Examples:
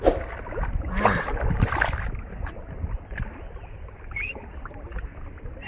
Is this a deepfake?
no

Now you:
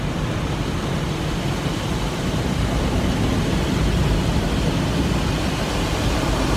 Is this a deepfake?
no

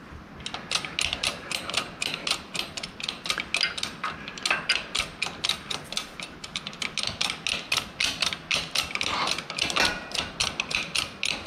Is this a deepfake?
no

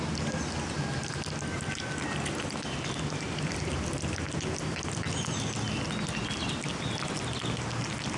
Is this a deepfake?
no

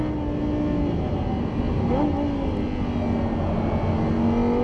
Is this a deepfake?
no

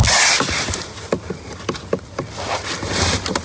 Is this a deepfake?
no